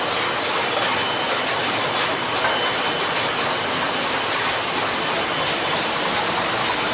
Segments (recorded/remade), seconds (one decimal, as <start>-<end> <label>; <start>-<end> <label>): 0.0-6.9 recorded